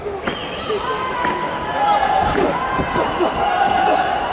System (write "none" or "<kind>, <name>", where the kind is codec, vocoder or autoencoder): none